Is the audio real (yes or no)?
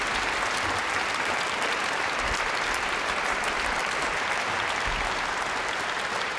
yes